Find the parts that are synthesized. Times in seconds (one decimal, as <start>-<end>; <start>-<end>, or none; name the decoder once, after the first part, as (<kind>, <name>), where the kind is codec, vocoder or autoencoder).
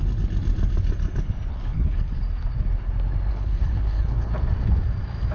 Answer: 1.5-2.2 (codec, HILCodec); 3.3-4.3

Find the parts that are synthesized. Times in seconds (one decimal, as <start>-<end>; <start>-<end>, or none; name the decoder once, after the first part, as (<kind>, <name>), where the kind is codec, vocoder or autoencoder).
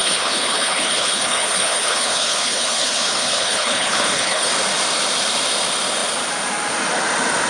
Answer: 0.0-4.5 (codec, HILCodec)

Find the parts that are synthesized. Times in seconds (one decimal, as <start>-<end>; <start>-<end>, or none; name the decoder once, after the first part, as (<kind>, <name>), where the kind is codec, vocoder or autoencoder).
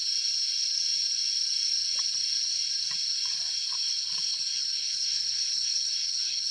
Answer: 3.8-6.5 (codec, HILCodec)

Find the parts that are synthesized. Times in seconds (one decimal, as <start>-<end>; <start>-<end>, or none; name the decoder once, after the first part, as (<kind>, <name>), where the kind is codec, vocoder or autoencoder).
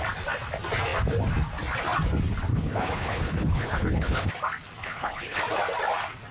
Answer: 2.5-4.3 (codec, HILCodec); 4.8-5.4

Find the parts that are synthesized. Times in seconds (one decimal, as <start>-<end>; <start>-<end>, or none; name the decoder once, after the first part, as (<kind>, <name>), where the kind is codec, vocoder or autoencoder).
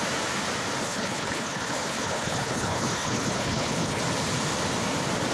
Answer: 0.8-4.0 (codec, HILCodec)